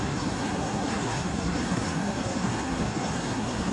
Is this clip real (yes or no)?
no